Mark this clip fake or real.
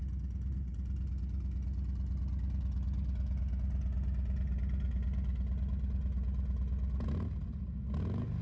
real